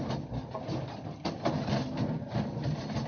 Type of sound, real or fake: real